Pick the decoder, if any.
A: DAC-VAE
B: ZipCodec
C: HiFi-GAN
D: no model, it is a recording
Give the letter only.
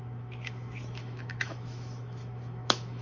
A